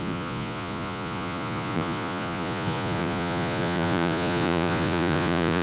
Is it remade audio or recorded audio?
remade